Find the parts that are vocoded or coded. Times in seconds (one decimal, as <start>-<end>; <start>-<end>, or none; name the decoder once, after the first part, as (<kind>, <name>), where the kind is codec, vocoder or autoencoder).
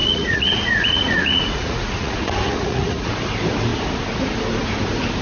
0.0-3.1 (vocoder, Vocos)